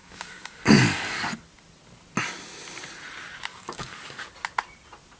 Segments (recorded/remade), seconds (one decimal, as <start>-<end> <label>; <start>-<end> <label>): 0.0-1.4 remade; 1.4-3.5 recorded; 3.5-4.2 remade; 4.2-5.2 recorded